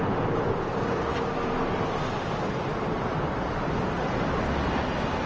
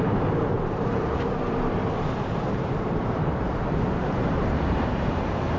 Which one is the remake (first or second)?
second